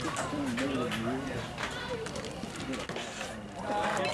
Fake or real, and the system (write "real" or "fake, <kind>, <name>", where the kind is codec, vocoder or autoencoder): real